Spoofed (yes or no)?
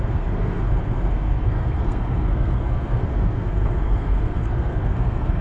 yes